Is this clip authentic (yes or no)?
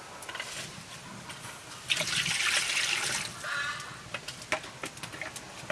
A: yes